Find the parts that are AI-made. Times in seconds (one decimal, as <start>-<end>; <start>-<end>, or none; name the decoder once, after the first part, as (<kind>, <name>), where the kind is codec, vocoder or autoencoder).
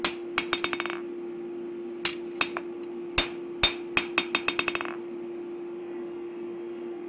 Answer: 5.8-7.1 (codec, DAC)